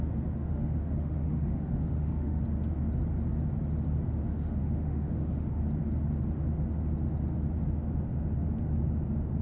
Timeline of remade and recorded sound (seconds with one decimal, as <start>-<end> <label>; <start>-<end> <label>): 0.0-0.4 recorded; 0.4-2.4 remade; 2.4-4.2 recorded; 4.2-5.6 remade; 5.6-9.4 recorded